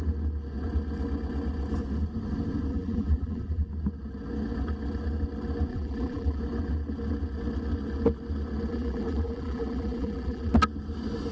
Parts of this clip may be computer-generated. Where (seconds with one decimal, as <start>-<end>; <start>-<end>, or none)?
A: 2.7-3.7; 5.7-6.4; 8.7-10.5